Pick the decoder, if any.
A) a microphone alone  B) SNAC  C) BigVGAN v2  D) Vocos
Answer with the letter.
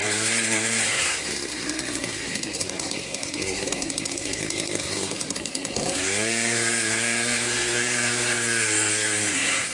B